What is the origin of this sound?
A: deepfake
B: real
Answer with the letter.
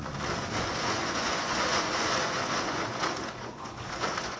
A